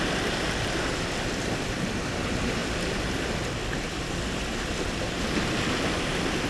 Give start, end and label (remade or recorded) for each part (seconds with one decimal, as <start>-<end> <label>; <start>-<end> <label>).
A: 0.0-6.5 recorded